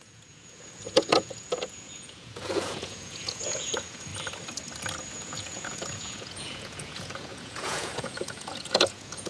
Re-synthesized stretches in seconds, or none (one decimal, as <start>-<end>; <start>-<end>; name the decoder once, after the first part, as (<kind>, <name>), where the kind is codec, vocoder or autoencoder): 0.0-4.1 (vocoder, Vocos); 5.1-9.3